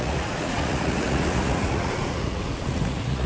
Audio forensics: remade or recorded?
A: remade